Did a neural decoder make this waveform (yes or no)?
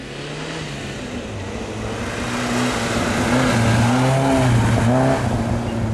no